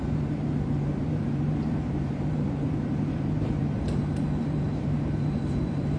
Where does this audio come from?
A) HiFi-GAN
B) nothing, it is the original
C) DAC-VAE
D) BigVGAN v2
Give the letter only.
D